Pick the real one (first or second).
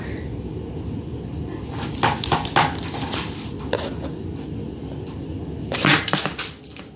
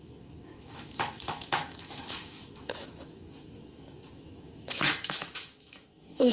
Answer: first